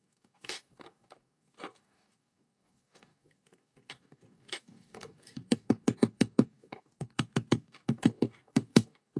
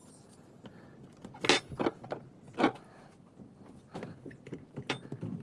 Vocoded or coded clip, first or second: first